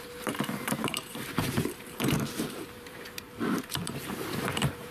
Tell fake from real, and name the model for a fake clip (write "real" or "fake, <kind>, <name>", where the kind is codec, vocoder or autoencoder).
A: fake, vocoder, BigVGAN v2